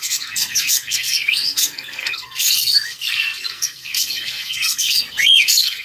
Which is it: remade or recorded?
remade